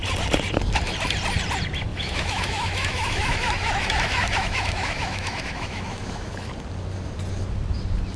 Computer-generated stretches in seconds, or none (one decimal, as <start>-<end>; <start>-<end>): 1.9-6.5